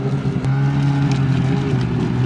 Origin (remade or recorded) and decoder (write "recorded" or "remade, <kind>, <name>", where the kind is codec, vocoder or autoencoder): recorded